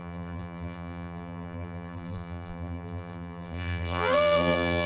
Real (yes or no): no